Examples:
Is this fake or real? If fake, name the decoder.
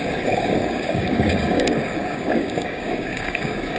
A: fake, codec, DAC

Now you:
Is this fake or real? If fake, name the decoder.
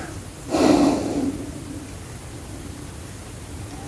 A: real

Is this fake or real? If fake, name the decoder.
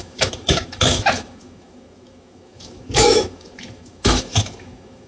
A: fake, autoencoder, DAC-VAE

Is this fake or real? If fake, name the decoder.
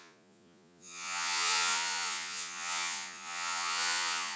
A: fake, vocoder, Vocos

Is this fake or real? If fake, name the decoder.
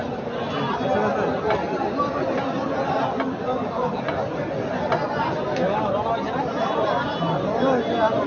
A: real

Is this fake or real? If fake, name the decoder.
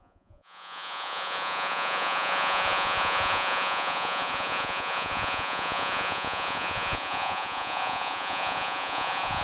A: fake, vocoder, Vocos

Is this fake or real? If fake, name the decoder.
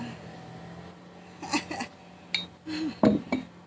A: real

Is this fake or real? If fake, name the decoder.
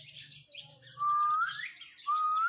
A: real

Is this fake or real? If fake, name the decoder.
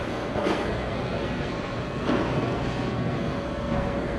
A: fake, codec, SNAC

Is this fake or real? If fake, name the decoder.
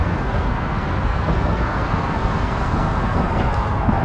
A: fake, codec, SNAC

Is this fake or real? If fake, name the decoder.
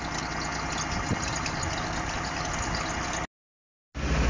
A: real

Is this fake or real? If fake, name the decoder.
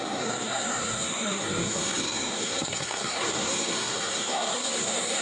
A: fake, codec, SNAC